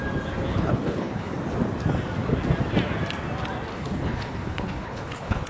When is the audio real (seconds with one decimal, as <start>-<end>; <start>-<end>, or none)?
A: 0.0-0.5; 1.3-3.7